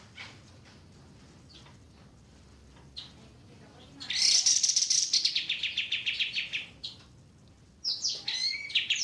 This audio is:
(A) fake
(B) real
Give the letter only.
B